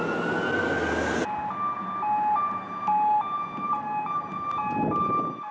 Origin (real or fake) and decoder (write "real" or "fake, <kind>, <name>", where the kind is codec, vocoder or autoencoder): real